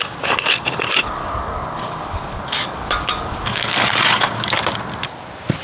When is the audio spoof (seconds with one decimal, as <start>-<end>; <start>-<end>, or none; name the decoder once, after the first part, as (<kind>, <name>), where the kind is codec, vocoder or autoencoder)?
1.2-4.6 (codec, DAC)